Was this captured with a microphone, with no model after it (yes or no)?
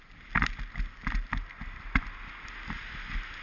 yes